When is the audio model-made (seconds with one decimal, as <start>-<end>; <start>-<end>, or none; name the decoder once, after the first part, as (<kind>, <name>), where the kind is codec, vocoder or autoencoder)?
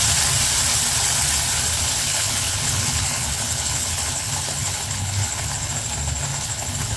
2.0-5.7 (codec, HILCodec); 6.3-7.0